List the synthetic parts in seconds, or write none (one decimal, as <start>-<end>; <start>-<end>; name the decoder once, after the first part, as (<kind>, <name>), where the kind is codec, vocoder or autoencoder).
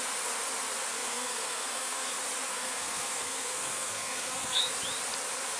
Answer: 0.9-2.1 (codec, SNAC); 2.5-4.6